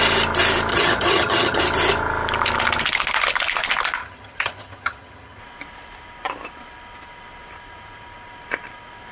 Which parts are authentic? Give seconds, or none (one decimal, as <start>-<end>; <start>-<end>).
0.0-0.7; 1.6-4.0; 5.4-9.1